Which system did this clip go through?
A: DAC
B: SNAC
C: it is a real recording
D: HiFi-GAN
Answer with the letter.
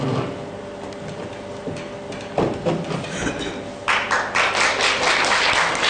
C